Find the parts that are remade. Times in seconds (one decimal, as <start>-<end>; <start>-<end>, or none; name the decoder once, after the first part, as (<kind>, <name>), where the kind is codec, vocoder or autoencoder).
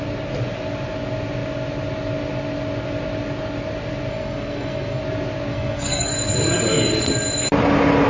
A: 4.1-5.0 (codec, SNAC); 5.5-6.1